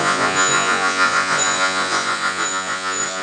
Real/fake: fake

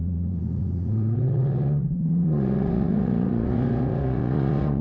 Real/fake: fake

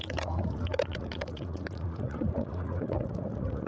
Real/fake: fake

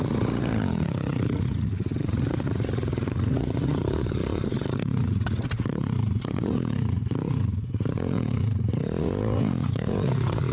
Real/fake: fake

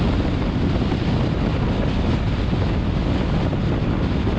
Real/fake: real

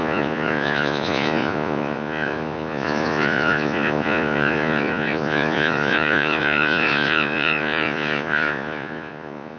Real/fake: fake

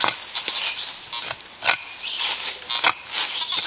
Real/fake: real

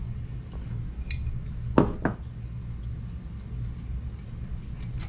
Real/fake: real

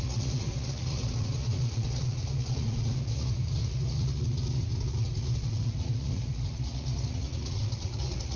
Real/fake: fake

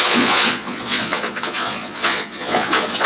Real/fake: fake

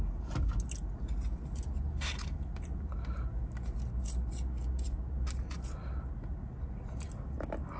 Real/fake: real